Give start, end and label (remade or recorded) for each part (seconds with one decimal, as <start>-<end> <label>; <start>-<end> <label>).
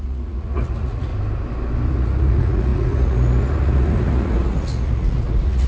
0.0-1.1 remade; 1.1-1.9 recorded; 1.9-5.7 remade